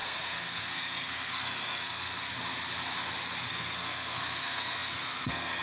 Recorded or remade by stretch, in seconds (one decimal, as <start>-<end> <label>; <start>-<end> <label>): 0.0-2.3 remade; 2.3-3.5 recorded; 3.5-5.6 remade